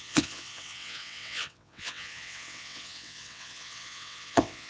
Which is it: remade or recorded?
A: remade